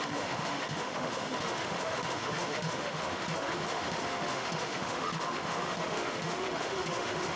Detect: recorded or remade remade